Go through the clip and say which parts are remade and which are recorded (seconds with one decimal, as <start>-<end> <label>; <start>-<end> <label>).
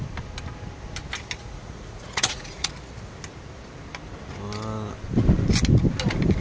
0.0-1.4 recorded; 1.4-2.7 remade; 2.7-6.4 recorded